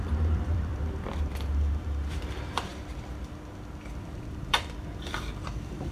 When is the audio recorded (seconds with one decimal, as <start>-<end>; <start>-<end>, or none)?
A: 0.7-1.5; 2.7-4.3